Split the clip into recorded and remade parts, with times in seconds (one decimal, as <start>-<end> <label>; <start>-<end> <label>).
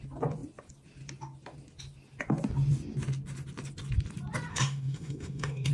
0.0-4.5 recorded; 4.5-5.7 remade